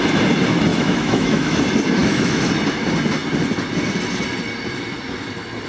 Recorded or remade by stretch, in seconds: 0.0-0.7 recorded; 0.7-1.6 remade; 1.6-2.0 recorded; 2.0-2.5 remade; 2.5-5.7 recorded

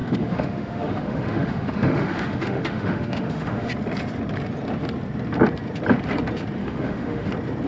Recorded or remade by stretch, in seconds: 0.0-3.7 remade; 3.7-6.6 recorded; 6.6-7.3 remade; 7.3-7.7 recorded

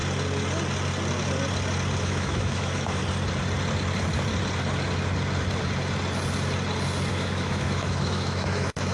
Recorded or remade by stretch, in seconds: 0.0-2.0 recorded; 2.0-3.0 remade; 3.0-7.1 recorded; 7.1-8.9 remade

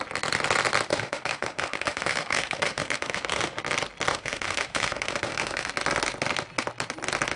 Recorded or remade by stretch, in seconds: 0.0-0.9 recorded; 0.9-3.6 remade; 3.6-4.1 recorded; 4.1-5.7 remade; 5.7-7.4 recorded